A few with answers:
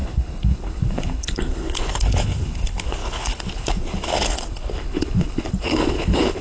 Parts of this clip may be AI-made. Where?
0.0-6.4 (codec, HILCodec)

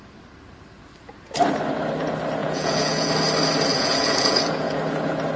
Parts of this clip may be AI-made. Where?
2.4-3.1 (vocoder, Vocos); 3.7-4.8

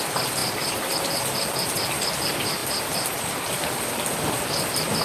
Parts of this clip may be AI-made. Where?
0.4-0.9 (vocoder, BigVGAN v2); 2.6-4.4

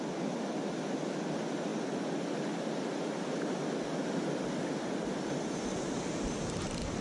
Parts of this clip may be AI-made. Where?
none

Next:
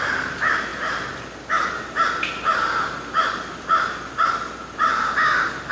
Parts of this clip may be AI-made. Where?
none

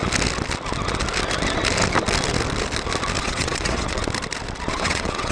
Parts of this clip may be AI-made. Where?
3.2-4.0 (vocoder, WaveNeXt); 4.7-5.3

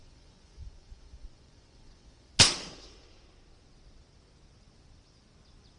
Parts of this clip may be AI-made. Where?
0.0-2.3 (vocoder, Vocos)

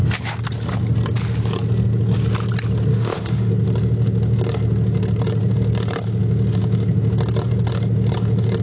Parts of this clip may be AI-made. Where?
2.9-3.5 (autoencoder, DAC-VAE)